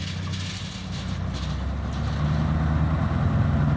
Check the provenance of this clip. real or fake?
real